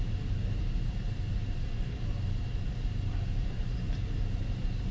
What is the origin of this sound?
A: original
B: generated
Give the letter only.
B